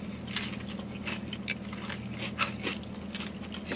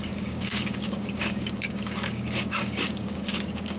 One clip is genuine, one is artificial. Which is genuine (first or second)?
first